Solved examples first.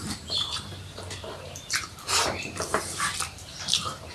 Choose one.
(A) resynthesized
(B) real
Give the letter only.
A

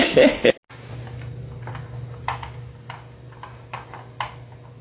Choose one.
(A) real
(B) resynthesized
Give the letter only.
A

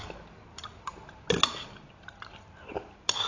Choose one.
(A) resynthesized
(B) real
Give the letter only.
B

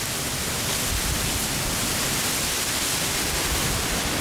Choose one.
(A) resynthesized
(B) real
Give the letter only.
B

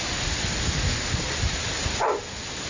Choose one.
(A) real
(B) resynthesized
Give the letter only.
A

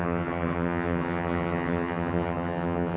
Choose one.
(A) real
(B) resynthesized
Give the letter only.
B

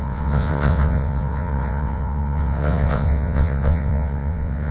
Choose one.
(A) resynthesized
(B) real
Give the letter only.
A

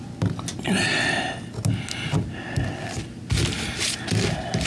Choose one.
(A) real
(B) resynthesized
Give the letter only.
A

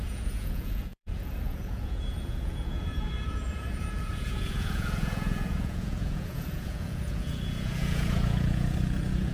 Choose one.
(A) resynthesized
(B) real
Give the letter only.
A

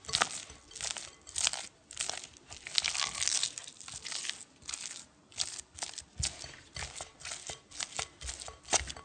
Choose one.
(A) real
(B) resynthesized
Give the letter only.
A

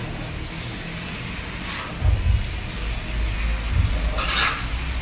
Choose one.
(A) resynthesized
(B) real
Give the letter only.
B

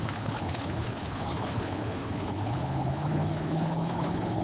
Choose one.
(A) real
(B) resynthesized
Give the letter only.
B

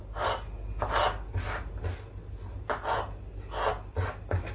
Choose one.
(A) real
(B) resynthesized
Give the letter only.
A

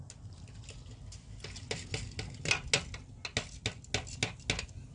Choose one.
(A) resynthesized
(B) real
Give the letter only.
B